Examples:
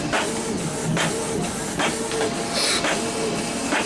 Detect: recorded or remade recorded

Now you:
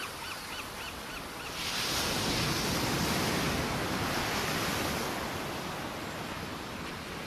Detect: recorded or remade recorded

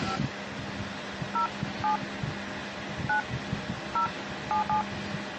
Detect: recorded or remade recorded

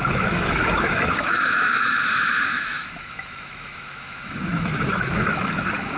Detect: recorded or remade remade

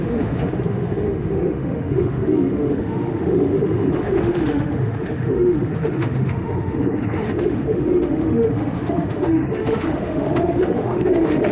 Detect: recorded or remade remade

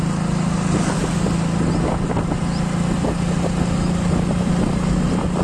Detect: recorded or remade recorded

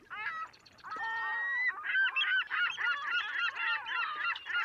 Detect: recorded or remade recorded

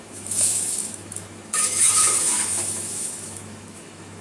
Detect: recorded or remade remade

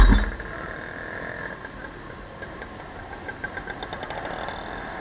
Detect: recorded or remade recorded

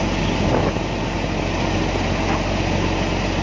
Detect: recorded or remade recorded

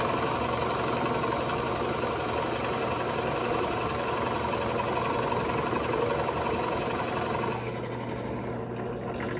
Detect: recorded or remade recorded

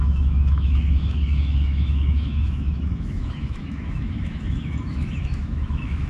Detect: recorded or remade remade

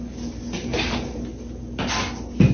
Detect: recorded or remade recorded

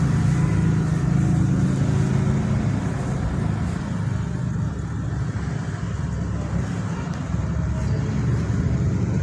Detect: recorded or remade recorded